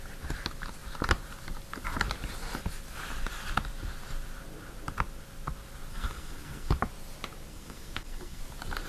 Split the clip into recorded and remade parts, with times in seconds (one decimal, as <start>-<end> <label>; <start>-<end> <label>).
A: 0.0-5.9 recorded; 5.9-6.7 remade; 6.7-7.5 recorded; 7.5-8.4 remade; 8.4-8.9 recorded